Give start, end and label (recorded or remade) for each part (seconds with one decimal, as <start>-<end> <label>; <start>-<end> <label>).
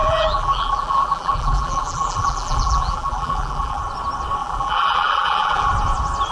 0.0-3.8 remade; 3.8-4.4 recorded; 4.4-5.7 remade; 5.7-6.3 recorded